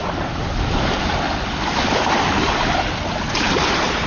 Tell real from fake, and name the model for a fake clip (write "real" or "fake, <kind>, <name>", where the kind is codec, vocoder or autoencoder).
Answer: real